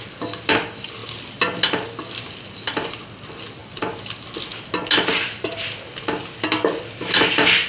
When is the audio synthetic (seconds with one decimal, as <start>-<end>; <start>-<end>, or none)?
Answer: 3.6-4.4; 5.1-5.6